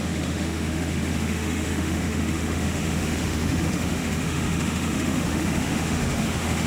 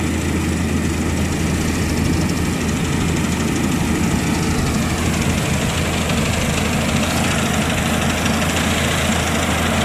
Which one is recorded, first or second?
second